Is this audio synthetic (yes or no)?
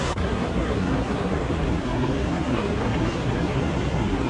yes